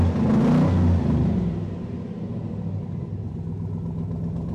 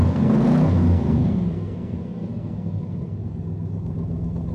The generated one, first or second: second